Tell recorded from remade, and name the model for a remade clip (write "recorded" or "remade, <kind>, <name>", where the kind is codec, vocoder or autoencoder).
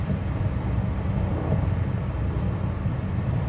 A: recorded